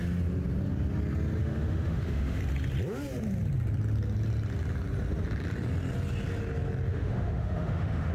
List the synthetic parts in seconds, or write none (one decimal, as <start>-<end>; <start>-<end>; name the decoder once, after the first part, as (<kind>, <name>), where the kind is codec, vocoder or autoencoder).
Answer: 1.4-2.4 (autoencoder, DAC-VAE); 6.9-8.1